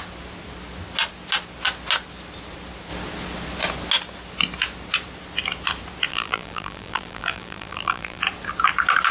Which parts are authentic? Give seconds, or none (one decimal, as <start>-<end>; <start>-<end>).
0.0-6.1; 8.2-9.1